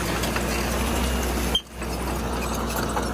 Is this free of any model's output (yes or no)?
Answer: yes